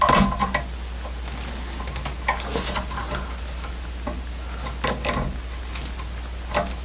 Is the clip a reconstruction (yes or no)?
no